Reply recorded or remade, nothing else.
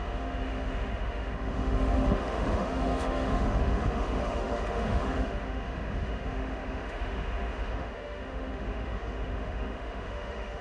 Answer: remade